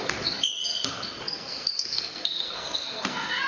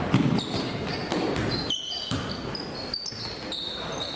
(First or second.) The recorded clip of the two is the second